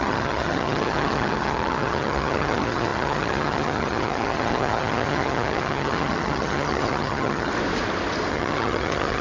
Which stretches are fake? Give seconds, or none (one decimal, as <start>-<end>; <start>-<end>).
0.0-7.5; 8.3-9.2